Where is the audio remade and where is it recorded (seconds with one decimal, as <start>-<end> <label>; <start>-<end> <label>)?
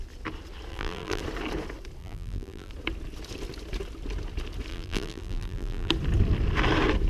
0.0-0.7 recorded; 0.7-1.2 remade; 1.2-2.0 recorded; 2.0-2.7 remade; 2.7-4.7 recorded; 4.7-5.9 remade; 5.9-7.1 recorded